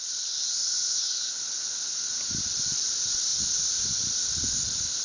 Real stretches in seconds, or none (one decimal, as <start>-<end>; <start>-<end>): 0.0-0.6; 1.3-5.0